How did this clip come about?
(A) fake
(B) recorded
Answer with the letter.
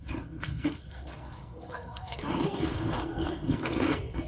A